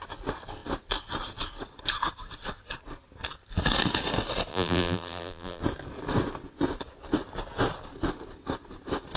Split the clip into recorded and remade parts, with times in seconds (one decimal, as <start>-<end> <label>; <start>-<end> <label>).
0.0-4.5 recorded; 4.5-5.6 remade; 5.6-9.2 recorded

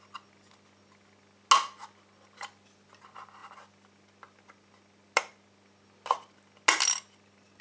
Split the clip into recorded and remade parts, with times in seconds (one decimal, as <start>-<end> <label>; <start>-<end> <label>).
0.0-7.6 recorded